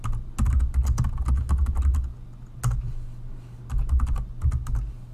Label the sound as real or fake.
real